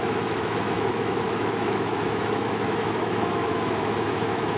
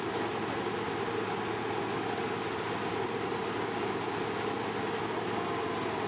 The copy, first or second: first